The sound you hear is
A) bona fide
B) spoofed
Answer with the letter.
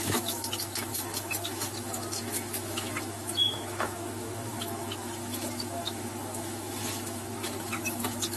B